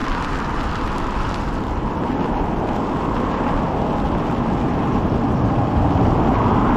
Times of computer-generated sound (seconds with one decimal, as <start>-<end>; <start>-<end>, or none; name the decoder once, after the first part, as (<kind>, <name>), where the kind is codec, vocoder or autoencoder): none